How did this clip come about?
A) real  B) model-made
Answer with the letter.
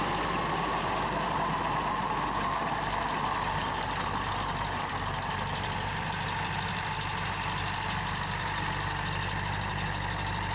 A